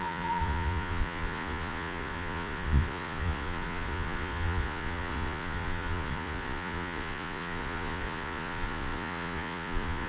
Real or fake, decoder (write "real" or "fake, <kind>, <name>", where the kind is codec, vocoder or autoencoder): fake, vocoder, Vocos